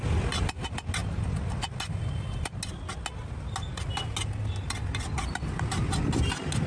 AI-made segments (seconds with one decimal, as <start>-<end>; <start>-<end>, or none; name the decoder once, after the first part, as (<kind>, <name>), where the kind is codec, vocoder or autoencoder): none